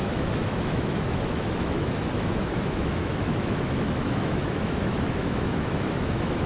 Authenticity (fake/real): fake